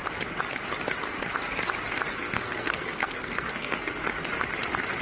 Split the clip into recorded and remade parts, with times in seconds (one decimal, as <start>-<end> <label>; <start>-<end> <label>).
0.0-2.1 recorded; 2.1-4.0 remade; 4.0-5.0 recorded